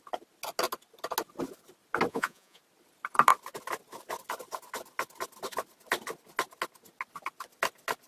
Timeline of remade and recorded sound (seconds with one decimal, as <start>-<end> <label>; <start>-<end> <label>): 0.0-2.1 recorded; 2.1-2.6 remade; 2.6-8.1 recorded